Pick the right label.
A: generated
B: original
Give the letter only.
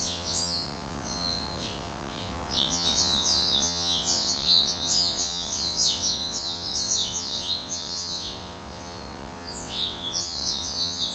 A